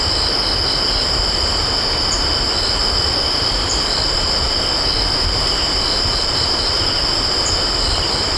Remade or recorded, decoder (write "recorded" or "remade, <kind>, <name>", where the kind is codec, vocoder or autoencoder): recorded